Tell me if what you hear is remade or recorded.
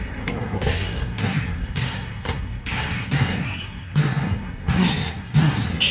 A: remade